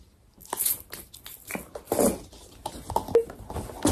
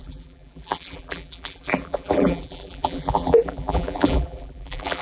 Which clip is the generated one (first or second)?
second